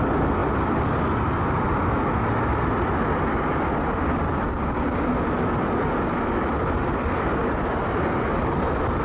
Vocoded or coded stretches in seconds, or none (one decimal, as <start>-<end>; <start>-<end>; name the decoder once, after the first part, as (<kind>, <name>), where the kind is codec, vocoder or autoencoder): none